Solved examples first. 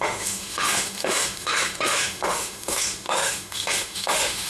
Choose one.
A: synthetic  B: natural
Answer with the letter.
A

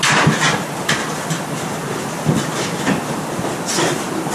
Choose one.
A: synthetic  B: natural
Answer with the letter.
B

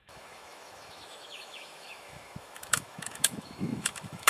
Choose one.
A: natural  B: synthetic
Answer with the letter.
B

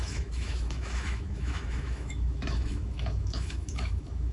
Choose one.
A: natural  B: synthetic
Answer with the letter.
B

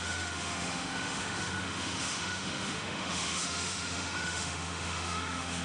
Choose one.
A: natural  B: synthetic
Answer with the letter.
B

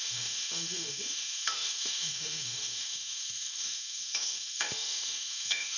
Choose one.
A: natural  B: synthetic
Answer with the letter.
B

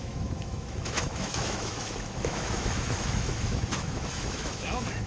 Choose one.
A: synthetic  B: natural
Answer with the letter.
A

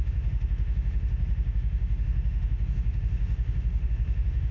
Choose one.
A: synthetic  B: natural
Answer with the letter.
A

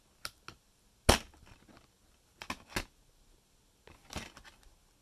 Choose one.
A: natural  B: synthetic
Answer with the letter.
A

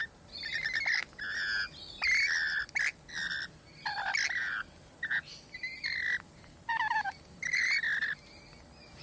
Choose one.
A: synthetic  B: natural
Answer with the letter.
B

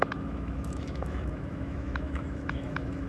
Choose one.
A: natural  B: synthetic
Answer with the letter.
B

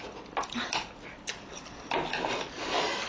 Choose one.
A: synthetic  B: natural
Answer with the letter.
B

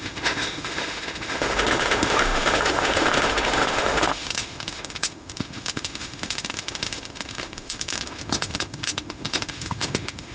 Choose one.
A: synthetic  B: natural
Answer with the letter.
A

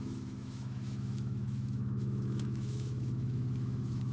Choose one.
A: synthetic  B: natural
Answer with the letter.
A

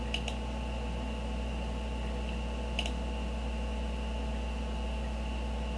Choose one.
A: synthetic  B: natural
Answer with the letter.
B